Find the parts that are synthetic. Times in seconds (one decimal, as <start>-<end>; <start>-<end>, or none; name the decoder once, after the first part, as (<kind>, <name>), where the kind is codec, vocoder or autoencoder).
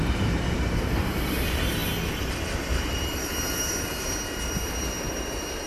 0.0-1.8 (vocoder, BigVGAN v2); 2.6-5.7